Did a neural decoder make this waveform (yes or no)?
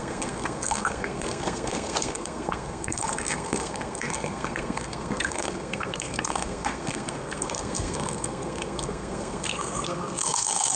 yes